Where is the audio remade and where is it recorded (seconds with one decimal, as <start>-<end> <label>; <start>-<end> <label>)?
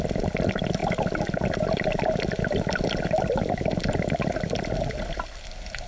0.0-0.8 remade; 0.8-3.0 recorded; 3.0-5.9 remade